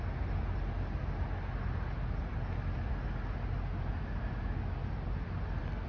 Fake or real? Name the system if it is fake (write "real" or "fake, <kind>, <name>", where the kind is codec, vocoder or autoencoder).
real